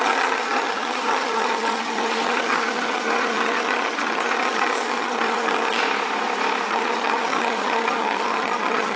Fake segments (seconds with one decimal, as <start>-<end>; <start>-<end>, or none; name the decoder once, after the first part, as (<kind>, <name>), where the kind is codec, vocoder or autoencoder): 0.0-5.8 (vocoder, HiFi-GAN); 6.7-9.0